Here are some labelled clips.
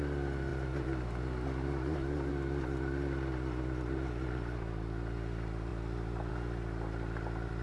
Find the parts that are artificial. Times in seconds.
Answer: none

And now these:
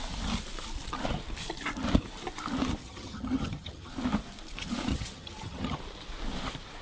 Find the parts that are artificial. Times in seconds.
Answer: 2.8-3.9 (vocoder, HiFi-GAN); 4.9-5.8

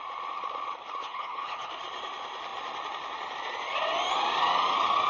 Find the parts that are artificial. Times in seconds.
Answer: 1.0-1.7 (codec, HILCodec)